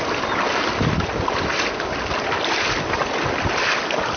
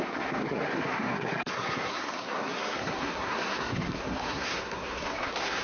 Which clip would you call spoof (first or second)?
second